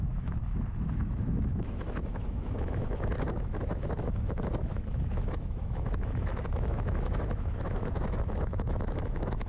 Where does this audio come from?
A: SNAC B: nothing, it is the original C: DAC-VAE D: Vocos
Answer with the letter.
C